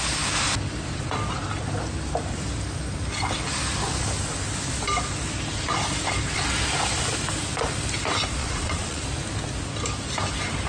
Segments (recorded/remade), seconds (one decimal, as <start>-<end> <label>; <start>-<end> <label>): 0.0-8.4 recorded; 8.4-9.0 remade; 9.0-10.7 recorded